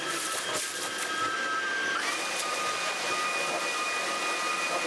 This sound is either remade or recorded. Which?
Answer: recorded